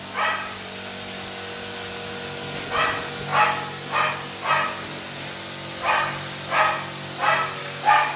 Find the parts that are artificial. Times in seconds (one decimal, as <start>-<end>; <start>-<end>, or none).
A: 7.6-8.2